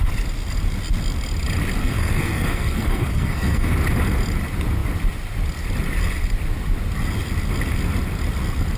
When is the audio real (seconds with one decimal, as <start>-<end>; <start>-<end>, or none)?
0.0-1.8; 3.7-8.8